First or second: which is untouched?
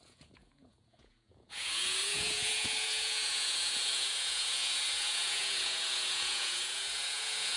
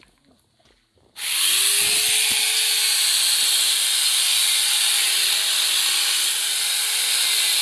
second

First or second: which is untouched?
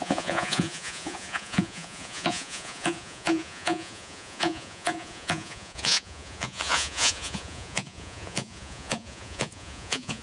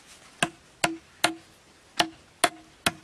second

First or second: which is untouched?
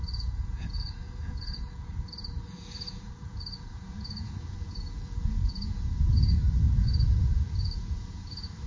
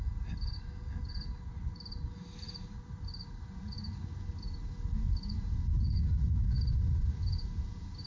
second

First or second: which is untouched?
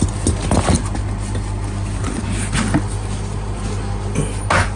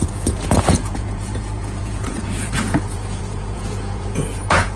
first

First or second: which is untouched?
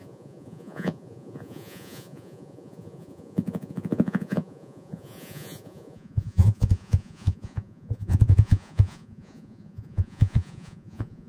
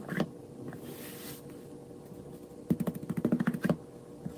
second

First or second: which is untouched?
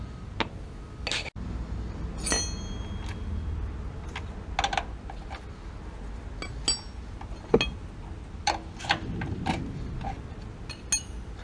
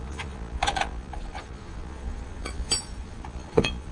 first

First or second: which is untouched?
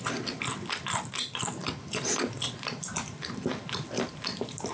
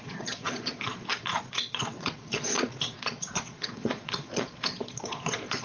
first